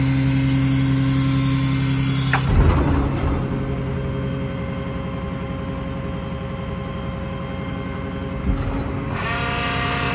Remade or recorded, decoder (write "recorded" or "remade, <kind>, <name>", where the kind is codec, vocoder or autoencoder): recorded